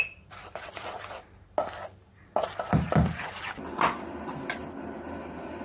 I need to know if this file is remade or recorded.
recorded